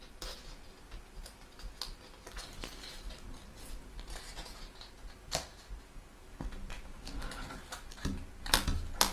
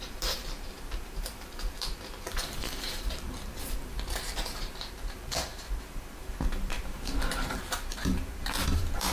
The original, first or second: first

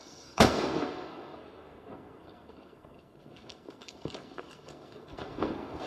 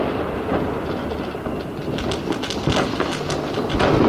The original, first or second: second